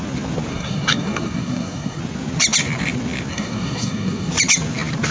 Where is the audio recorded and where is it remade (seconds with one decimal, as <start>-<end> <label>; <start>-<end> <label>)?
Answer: 0.0-0.5 recorded; 0.5-2.0 remade; 2.0-3.3 recorded; 3.3-4.3 remade; 4.3-5.1 recorded